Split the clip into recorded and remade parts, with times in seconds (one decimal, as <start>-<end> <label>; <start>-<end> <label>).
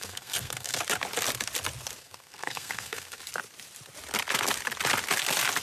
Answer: 0.0-0.8 remade; 0.8-2.0 recorded; 2.0-3.2 remade; 3.2-5.6 recorded